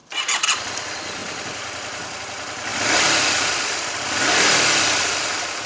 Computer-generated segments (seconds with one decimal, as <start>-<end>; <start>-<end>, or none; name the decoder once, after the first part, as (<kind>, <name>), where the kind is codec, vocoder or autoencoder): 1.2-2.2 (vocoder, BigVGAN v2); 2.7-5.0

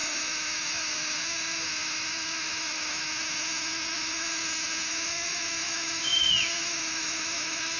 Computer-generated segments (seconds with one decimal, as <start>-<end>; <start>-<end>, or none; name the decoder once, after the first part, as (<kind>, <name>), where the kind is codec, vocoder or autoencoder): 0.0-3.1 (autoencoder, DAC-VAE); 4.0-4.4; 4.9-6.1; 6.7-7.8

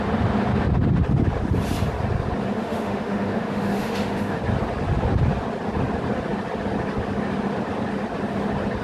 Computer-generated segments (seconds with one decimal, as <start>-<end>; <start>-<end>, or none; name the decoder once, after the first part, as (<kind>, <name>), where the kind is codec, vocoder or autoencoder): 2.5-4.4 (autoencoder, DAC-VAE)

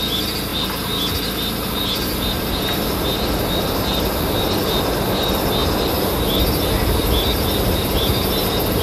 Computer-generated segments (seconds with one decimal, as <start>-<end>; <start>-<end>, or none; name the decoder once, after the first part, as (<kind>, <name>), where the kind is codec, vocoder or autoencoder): none

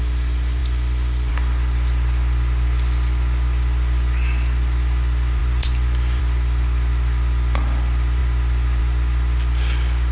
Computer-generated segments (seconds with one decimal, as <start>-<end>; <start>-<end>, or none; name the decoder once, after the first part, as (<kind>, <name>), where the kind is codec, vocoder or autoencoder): none

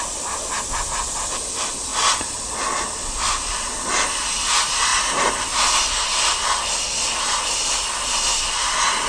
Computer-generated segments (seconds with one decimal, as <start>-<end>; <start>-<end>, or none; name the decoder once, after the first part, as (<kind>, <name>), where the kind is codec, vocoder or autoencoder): none

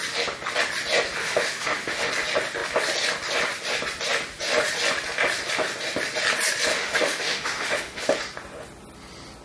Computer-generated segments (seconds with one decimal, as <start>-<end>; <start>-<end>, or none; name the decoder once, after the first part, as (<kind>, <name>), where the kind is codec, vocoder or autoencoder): 1.2-2.1 (autoencoder, DAC-VAE); 6.7-8.2